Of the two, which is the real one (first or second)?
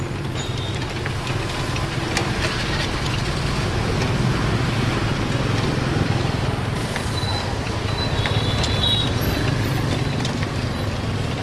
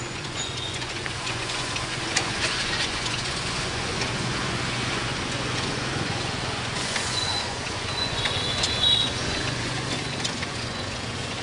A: first